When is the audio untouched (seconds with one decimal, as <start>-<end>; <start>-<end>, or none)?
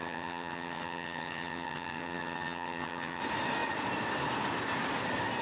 3.2-5.4